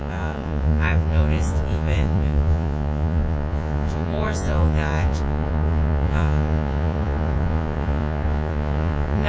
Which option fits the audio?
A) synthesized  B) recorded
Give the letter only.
A